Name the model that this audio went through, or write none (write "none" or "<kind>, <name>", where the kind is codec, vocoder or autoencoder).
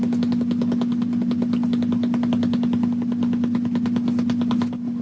none